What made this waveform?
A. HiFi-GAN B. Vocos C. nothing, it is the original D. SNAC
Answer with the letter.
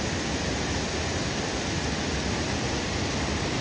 C